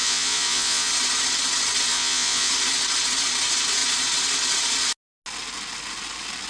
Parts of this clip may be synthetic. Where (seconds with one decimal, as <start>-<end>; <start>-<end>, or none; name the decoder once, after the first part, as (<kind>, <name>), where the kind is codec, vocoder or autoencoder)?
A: 0.0-0.9 (vocoder, Vocos); 1.9-2.5